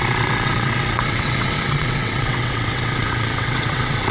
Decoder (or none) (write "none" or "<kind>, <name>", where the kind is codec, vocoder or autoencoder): vocoder, WaveNeXt